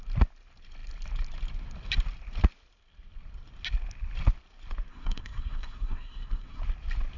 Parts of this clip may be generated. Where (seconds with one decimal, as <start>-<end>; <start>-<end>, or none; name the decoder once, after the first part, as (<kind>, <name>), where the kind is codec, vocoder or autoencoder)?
4.9-6.6 (codec, SNAC)

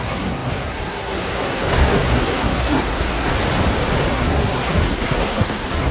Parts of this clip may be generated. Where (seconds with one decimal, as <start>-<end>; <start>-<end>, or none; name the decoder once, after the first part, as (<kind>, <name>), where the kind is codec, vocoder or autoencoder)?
0.0-3.3 (codec, SNAC); 4.1-5.9

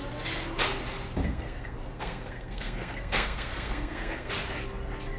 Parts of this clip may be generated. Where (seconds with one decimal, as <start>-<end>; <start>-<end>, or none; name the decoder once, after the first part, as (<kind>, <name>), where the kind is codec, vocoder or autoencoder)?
1.2-4.3 (codec, SNAC)

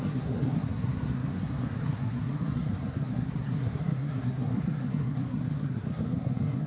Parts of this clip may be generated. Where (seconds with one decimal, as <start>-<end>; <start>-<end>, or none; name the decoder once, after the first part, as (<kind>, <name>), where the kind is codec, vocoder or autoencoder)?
0.0-6.7 (codec, SNAC)

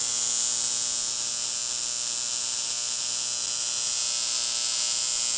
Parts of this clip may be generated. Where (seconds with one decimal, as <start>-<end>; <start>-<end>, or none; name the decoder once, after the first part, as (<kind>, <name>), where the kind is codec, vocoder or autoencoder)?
none

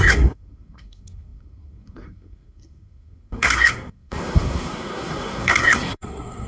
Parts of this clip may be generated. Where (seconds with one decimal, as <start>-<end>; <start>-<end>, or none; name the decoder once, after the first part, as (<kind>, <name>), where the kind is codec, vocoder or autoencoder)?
0.0-6.5 (codec, SNAC)

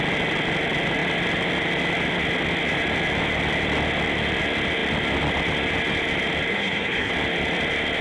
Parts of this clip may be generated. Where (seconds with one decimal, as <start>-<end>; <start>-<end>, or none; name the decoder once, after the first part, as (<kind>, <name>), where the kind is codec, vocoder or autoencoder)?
6.5-7.1 (codec, SNAC)

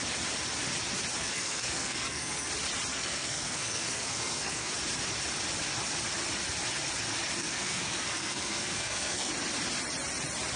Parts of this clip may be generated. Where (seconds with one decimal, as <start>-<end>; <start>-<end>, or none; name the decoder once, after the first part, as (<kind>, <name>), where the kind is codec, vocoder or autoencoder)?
1.2-2.5 (codec, SNAC); 2.9-4.7; 7.4-9.3